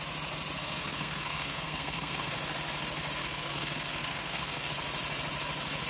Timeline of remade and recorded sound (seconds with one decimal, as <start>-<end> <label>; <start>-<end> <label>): 0.0-0.6 recorded; 0.6-2.3 remade; 2.3-3.2 recorded; 3.2-4.7 remade; 4.7-5.9 recorded